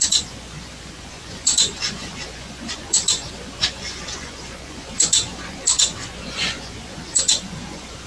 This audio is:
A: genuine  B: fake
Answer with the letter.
B